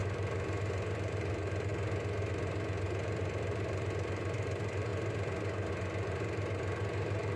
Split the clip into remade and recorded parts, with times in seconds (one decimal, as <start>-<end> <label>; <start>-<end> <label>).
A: 0.0-1.7 remade; 1.7-2.3 recorded; 2.3-7.4 remade